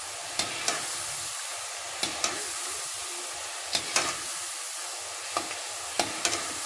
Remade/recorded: recorded